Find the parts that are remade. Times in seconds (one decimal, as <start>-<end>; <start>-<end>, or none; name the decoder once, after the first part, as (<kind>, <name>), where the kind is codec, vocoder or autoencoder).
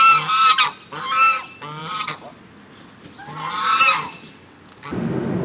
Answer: 1.8-2.4 (vocoder, BigVGAN v2)